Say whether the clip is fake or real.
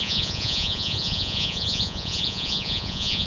fake